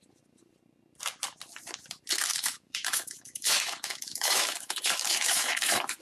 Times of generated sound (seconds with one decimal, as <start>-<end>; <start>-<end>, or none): 2.3-6.0